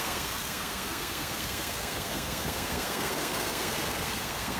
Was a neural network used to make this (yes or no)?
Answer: yes